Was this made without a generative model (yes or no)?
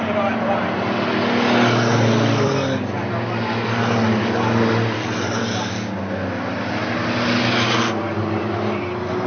yes